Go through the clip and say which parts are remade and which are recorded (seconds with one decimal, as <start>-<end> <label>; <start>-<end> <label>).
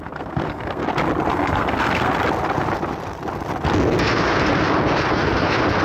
0.0-0.8 remade; 0.8-1.3 recorded; 1.3-2.1 remade; 2.1-5.8 recorded